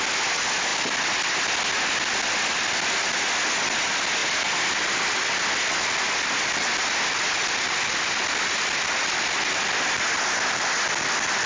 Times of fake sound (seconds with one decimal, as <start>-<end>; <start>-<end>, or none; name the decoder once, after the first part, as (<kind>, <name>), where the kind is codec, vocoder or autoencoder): none